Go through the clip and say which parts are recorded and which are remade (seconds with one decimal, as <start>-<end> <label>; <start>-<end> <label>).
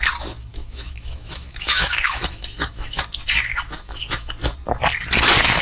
0.0-0.5 recorded; 0.5-3.0 remade; 3.0-3.5 recorded; 3.5-4.3 remade; 4.3-5.6 recorded